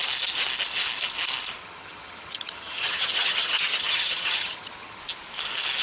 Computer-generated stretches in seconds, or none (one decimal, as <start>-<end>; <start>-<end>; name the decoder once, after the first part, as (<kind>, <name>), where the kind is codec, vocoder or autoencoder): 1.6-5.0 (vocoder, HiFi-GAN)